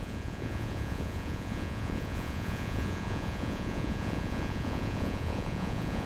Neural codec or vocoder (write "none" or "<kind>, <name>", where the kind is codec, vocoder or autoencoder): vocoder, Vocos